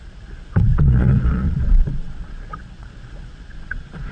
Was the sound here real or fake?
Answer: fake